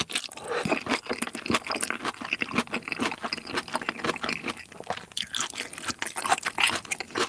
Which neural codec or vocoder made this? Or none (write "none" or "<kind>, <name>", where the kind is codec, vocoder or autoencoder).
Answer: none